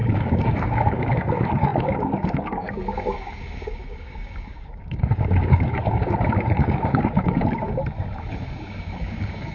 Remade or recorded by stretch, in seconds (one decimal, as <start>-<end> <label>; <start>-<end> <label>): 0.0-7.8 remade; 7.8-8.3 recorded; 8.3-9.5 remade